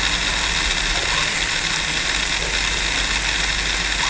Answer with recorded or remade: recorded